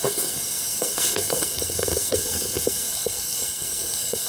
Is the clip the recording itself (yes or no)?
no